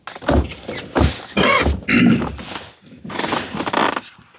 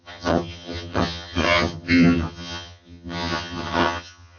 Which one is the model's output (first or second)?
second